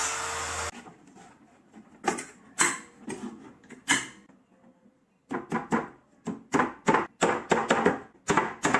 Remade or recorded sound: recorded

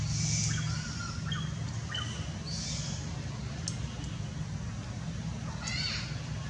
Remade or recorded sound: recorded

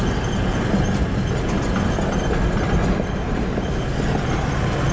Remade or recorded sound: recorded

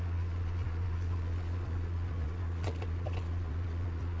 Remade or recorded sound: remade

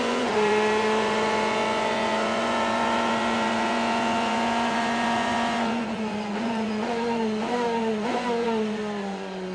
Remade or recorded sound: remade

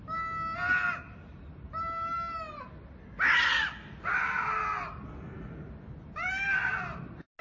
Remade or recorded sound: recorded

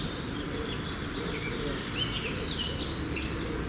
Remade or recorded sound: recorded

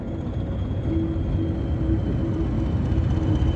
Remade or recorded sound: recorded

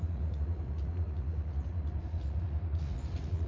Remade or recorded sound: remade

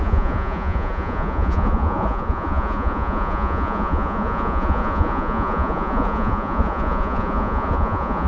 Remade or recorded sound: remade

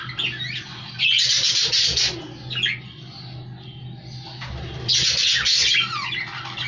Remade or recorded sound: recorded